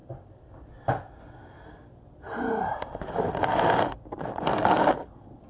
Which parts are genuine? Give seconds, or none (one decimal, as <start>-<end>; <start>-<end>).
0.0-5.5